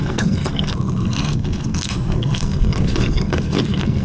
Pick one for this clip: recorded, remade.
remade